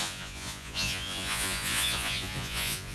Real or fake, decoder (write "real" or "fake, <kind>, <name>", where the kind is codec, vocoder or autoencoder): fake, vocoder, Vocos